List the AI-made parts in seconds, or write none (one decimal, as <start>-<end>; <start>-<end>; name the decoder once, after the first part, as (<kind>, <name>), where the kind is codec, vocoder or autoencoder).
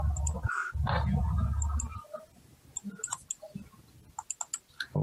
none